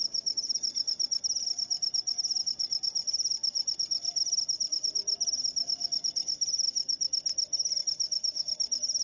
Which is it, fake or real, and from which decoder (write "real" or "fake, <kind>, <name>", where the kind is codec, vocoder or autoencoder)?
fake, vocoder, BigVGAN v2